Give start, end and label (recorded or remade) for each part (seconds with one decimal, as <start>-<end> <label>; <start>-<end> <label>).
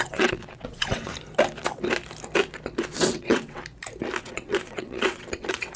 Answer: 0.0-1.1 remade; 1.1-2.8 recorded; 2.8-3.6 remade; 3.6-4.2 recorded; 4.2-5.8 remade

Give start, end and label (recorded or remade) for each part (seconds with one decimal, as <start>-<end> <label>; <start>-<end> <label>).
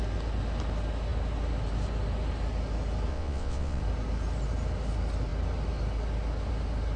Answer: 0.0-3.1 recorded; 3.1-3.8 remade; 3.8-7.0 recorded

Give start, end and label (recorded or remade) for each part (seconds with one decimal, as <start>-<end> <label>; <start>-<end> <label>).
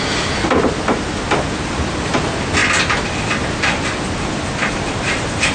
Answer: 0.0-5.5 recorded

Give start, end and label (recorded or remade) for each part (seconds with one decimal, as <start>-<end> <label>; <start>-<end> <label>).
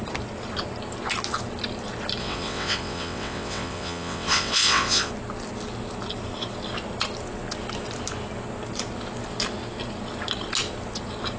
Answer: 0.0-2.2 recorded; 2.2-5.1 remade; 5.1-11.4 recorded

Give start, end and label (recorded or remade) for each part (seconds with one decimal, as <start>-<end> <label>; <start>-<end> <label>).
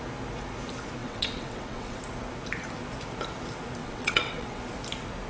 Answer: 0.0-1.0 recorded; 1.0-2.0 remade; 2.0-3.8 recorded; 3.8-4.6 remade; 4.6-5.3 recorded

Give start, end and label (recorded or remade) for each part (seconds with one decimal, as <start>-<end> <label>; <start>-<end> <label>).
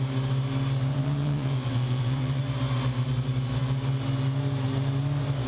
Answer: 0.0-0.9 recorded; 0.9-2.4 remade; 2.4-5.5 recorded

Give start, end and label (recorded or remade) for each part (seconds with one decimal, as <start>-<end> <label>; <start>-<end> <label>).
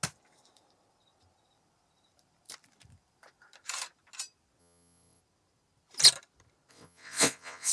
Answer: 0.0-4.6 recorded; 4.6-5.2 remade; 5.2-6.7 recorded; 6.7-7.7 remade